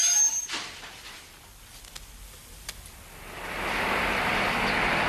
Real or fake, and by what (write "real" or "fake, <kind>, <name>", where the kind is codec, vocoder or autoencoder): real